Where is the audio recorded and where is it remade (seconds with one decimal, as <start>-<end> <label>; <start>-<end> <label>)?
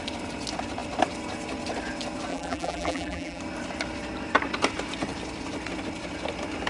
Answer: 0.0-2.3 recorded; 2.3-3.4 remade; 3.4-6.7 recorded